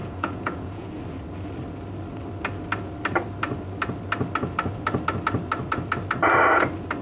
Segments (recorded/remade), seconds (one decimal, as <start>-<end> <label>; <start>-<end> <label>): 0.0-0.9 remade; 0.9-7.0 recorded